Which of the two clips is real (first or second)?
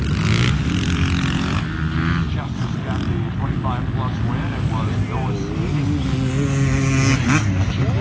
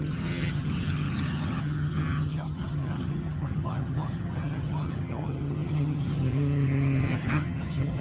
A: first